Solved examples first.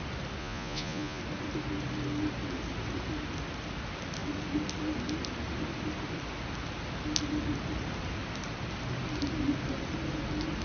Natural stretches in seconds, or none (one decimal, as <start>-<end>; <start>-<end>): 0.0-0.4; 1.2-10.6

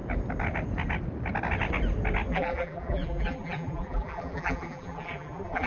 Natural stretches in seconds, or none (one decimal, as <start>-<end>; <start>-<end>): 0.0-2.3

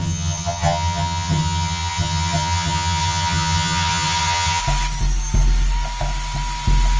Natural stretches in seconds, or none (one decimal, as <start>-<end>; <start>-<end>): 4.6-7.0

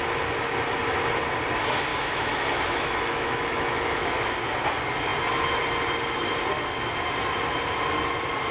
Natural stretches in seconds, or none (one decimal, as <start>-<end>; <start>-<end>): 0.0-1.9; 4.3-8.5

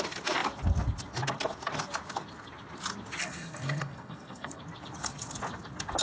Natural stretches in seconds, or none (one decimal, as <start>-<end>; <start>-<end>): 0.0-3.2; 4.6-6.0

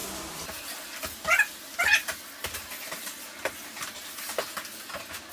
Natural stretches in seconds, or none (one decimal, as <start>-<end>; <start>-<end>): 0.0-5.3